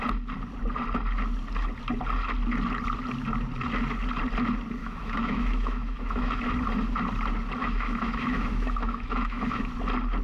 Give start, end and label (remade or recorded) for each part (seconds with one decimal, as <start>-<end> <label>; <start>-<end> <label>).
0.0-4.8 recorded; 4.8-6.4 remade; 6.4-7.6 recorded; 7.6-9.7 remade; 9.7-10.2 recorded